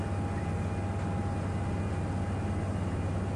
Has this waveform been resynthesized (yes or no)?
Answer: no